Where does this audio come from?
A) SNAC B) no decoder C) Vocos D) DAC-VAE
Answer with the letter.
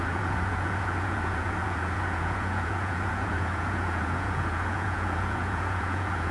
C